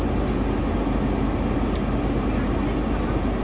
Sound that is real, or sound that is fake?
real